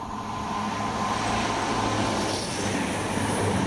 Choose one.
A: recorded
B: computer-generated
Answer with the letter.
A